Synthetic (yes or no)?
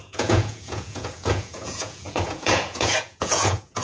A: yes